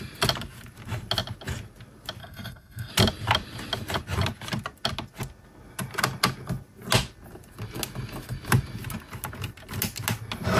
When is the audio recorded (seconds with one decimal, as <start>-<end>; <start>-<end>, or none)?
0.0-2.2; 2.9-10.6